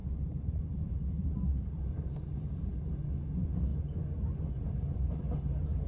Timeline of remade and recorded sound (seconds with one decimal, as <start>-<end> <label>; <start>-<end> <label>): 0.0-1.3 remade; 1.3-3.7 recorded; 3.7-4.3 remade; 4.3-5.9 recorded